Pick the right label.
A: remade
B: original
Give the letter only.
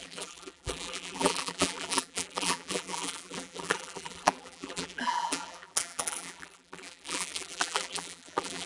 A